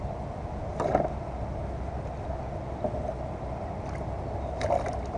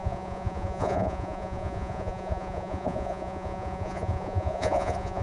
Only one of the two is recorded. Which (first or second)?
first